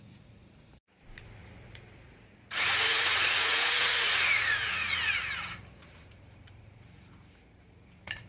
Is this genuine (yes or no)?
no